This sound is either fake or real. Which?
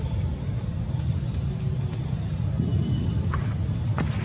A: real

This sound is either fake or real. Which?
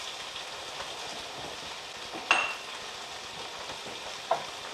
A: real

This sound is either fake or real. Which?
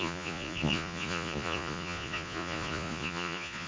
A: fake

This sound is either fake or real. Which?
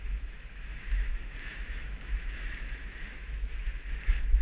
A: fake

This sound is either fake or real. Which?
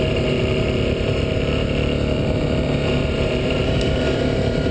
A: fake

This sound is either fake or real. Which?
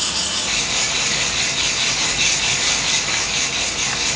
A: fake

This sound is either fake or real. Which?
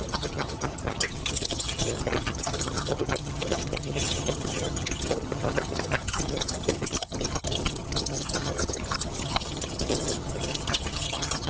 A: fake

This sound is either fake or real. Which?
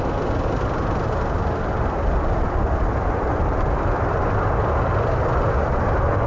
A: real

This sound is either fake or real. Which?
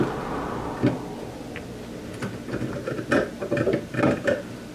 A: real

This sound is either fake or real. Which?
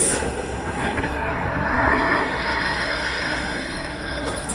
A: fake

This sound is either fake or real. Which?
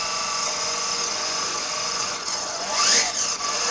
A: fake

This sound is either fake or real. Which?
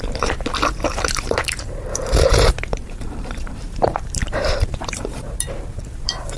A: fake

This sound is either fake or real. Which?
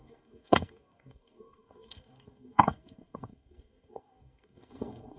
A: fake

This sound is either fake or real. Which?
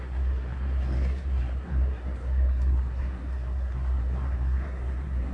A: fake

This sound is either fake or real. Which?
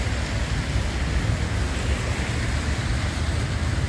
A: real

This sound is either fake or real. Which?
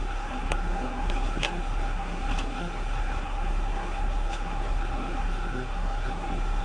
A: fake